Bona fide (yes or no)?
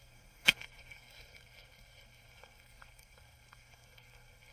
no